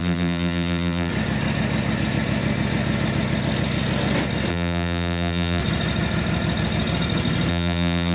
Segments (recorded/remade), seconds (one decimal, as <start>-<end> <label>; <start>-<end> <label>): 0.0-1.1 remade; 1.1-4.5 recorded; 4.5-5.6 remade; 5.6-7.5 recorded; 7.5-8.1 remade